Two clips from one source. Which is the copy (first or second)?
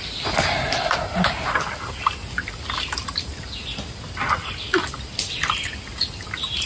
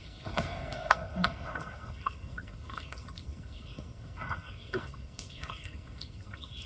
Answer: second